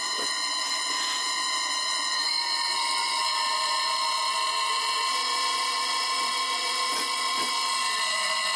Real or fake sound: fake